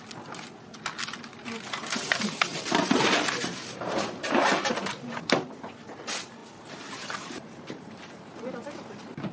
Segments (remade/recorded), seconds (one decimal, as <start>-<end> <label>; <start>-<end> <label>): 0.0-2.5 recorded; 2.5-4.8 remade; 4.8-6.4 recorded; 6.4-8.5 remade; 8.5-9.3 recorded